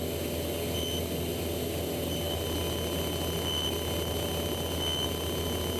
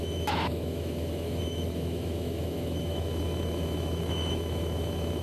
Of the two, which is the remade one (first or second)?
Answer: second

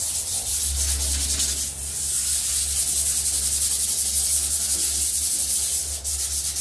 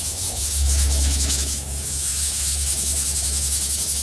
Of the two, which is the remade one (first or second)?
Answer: second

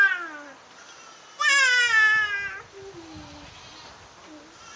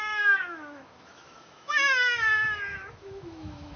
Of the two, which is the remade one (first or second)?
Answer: second